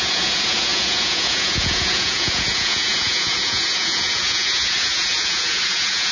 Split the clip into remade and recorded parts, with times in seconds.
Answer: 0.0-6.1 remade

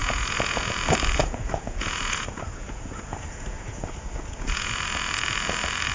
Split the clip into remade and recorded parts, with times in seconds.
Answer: 0.0-0.7 remade; 0.7-1.2 recorded; 1.2-4.7 remade; 4.7-5.9 recorded

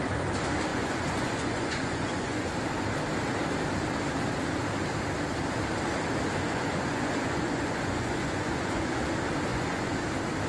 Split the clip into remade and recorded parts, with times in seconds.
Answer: 0.0-0.7 recorded; 0.7-2.5 remade; 2.5-6.4 recorded; 6.4-9.0 remade; 9.0-9.5 recorded; 9.5-10.0 remade; 10.0-10.5 recorded

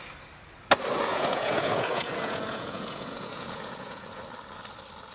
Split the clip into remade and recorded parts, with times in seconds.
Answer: 0.0-1.1 recorded; 1.1-4.2 remade; 4.2-5.1 recorded

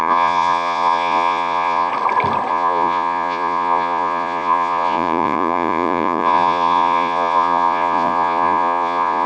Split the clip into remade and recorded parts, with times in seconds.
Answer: 0.0-1.9 remade; 1.9-2.5 recorded; 2.5-9.3 remade

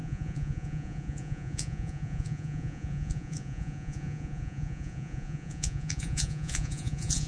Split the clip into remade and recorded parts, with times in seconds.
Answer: 0.0-7.3 remade

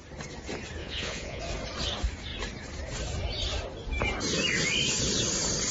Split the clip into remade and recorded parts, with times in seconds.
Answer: 0.0-0.8 recorded; 0.8-1.4 remade; 1.4-5.7 recorded